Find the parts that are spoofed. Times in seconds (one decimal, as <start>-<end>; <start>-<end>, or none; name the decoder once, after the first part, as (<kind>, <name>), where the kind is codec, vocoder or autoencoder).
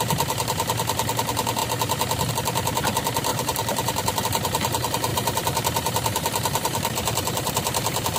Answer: 3.3-4.2 (vocoder, BigVGAN v2); 5.1-8.2